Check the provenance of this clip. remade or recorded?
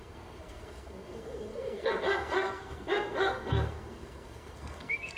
remade